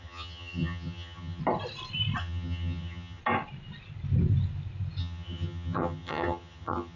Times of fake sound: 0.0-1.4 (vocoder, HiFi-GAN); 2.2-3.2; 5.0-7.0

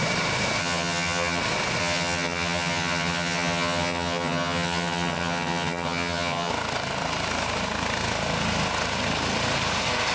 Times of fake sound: 0.6-1.4 (vocoder, HiFi-GAN); 1.8-6.5

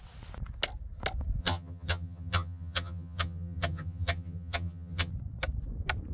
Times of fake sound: 1.4-5.1 (vocoder, HiFi-GAN)

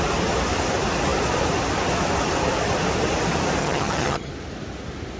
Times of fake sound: 3.6-4.3 (vocoder, HiFi-GAN)